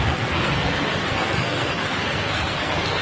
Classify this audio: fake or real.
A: fake